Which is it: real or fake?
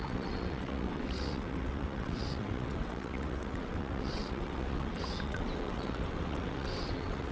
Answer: fake